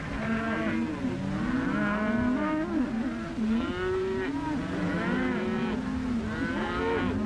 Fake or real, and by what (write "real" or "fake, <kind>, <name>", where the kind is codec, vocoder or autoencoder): real